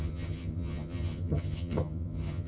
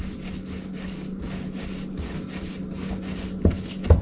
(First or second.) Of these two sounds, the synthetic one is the first